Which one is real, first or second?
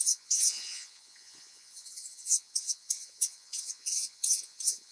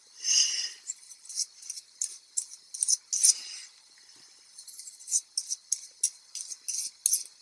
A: second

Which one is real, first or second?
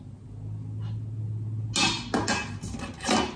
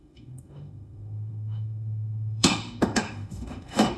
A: first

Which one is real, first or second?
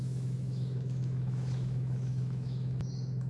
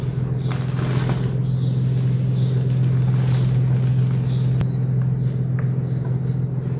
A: second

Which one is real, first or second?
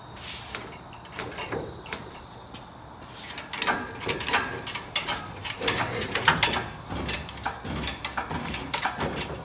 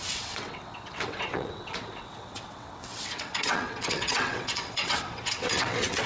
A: first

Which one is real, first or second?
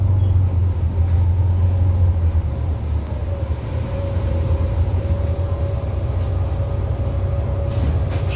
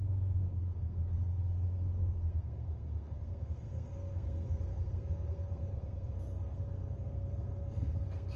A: first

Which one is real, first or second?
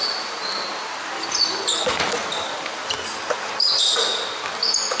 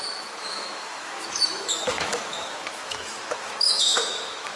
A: first